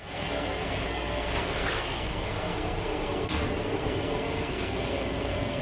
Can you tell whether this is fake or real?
fake